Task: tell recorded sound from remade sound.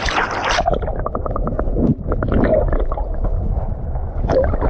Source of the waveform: recorded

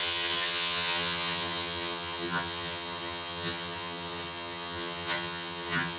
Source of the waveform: remade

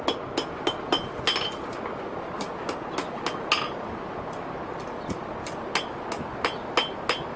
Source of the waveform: recorded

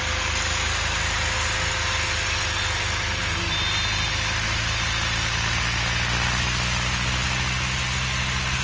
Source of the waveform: recorded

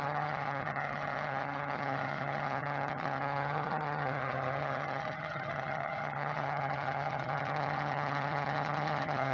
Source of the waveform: remade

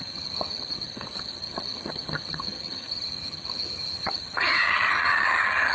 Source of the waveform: remade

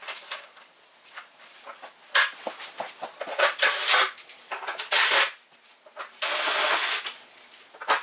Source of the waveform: recorded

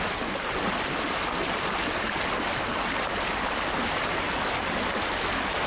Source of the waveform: recorded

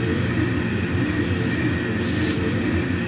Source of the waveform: recorded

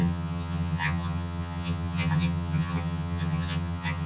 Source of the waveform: remade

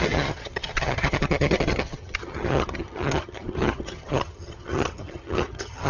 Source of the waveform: remade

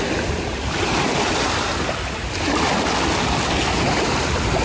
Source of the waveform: recorded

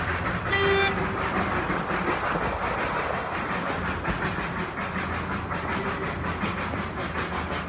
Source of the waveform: recorded